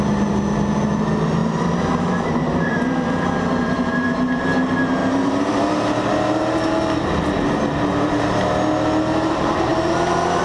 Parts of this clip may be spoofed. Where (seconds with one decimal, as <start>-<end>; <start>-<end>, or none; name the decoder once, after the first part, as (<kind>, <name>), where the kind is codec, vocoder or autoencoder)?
1.4-3.9 (vocoder, BigVGAN v2); 5.0-5.6